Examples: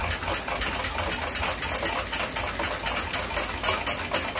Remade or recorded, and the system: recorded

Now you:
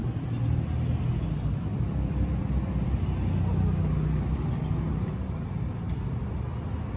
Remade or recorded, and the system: recorded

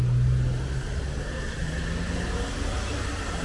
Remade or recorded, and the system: recorded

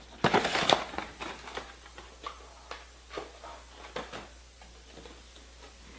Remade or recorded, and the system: remade, vocoder, BigVGAN v2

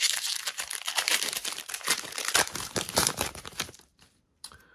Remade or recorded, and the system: remade, vocoder, BigVGAN v2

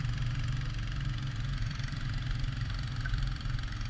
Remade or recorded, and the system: remade, vocoder, BigVGAN v2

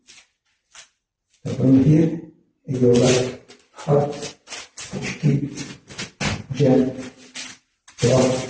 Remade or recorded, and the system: recorded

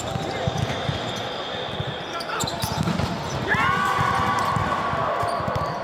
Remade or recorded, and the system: recorded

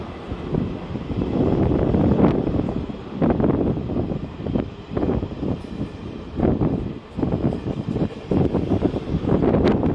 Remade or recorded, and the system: remade, vocoder, BigVGAN v2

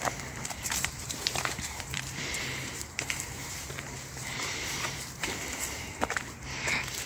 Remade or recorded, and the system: remade, vocoder, BigVGAN v2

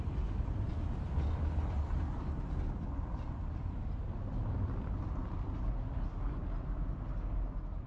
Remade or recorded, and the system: recorded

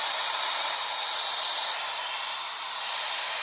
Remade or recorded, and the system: remade, vocoder, BigVGAN v2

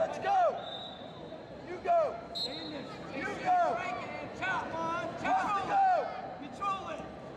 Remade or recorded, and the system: recorded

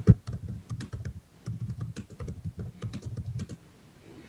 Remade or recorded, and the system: recorded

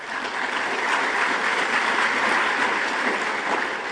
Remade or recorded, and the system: remade, vocoder, BigVGAN v2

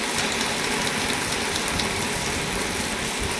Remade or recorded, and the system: recorded